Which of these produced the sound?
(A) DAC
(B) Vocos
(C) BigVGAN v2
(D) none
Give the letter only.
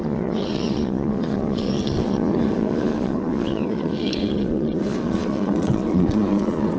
B